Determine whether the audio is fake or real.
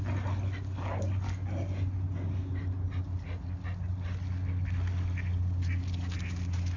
real